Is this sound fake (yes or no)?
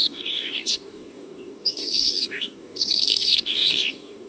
yes